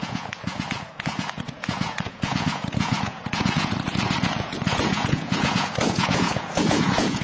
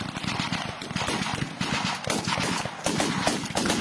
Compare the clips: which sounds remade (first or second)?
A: first